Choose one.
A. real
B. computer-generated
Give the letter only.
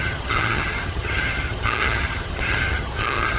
B